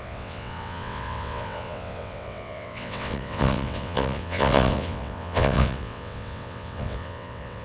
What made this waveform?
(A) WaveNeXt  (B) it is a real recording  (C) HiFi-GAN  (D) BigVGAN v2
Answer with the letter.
A